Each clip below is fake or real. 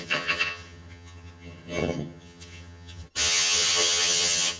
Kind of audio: fake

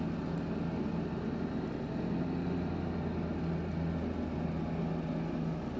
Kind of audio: real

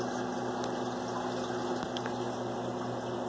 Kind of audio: real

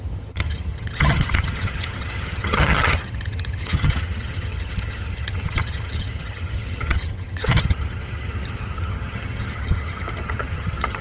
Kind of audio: fake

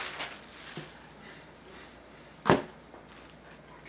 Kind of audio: real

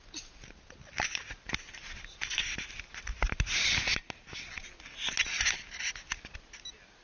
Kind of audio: real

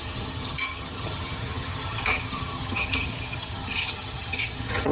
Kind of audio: fake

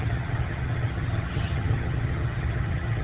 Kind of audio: fake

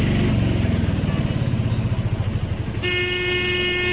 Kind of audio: real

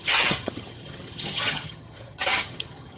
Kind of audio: fake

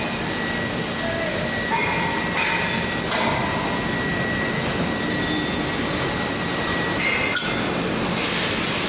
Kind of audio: real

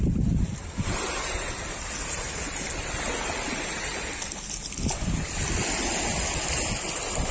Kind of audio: real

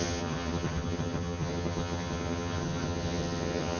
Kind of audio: fake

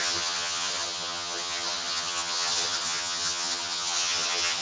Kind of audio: fake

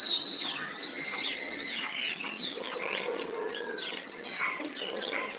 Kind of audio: fake